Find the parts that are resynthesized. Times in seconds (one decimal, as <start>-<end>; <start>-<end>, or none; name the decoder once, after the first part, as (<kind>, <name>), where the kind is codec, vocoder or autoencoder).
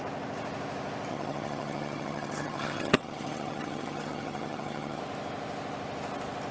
1.1-5.0 (vocoder, HiFi-GAN)